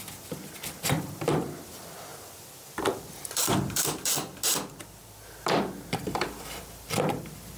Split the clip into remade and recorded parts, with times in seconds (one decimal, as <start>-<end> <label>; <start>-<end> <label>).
0.0-4.3 remade; 4.3-4.8 recorded; 4.8-7.6 remade